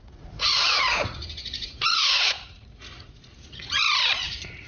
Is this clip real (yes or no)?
no